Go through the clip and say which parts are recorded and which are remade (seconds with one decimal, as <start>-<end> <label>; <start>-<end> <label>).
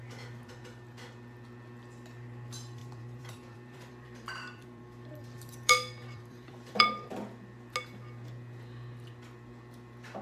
0.0-2.8 recorded; 2.8-7.1 remade; 7.1-10.2 recorded